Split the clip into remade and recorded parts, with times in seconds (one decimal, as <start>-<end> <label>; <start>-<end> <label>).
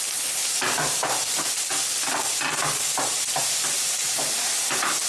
0.0-0.4 remade; 0.4-3.4 recorded; 3.4-5.1 remade